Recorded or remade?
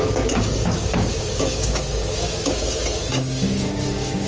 remade